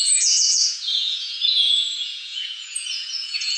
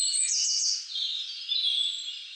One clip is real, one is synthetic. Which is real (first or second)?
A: second